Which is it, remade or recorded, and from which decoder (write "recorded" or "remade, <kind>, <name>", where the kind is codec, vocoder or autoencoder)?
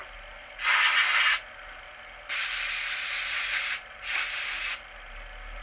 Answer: recorded